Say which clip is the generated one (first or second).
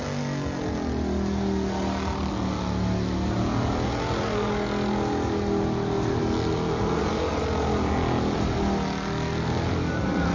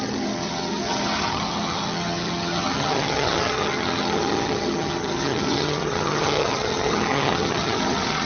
second